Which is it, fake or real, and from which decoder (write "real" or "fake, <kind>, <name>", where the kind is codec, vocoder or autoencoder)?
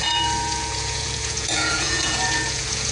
fake, vocoder, Vocos